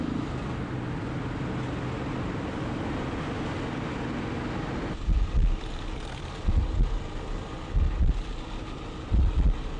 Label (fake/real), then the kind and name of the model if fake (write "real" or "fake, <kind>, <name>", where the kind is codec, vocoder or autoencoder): real